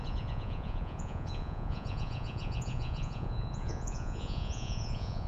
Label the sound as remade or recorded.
remade